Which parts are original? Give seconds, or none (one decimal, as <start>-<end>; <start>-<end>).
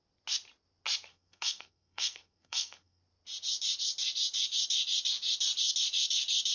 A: 0.0-1.1; 3.0-6.5